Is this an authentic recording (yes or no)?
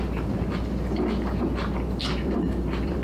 no